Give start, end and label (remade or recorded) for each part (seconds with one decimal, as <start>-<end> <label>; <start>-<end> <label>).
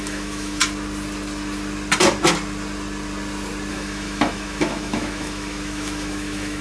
0.0-0.6 remade; 0.6-3.7 recorded; 3.7-6.6 remade